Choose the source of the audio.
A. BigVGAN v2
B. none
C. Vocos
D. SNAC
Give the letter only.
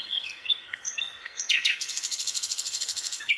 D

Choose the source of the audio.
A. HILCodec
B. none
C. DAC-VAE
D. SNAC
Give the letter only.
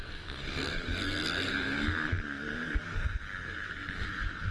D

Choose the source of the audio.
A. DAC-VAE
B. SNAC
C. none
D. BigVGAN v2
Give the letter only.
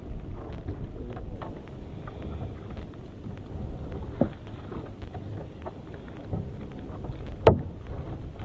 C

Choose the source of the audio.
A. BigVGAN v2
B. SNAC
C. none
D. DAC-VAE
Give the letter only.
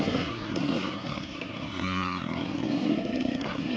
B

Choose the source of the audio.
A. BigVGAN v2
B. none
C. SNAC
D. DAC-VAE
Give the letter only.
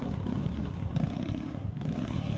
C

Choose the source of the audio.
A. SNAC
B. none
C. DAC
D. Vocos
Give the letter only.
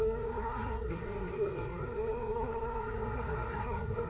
A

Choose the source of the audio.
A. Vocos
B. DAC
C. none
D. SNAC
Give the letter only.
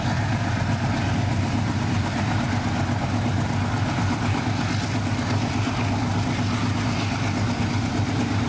C